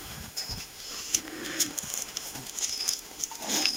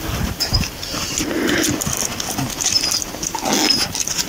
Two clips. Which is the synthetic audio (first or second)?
first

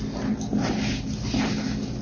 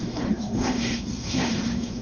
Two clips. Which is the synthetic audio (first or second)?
second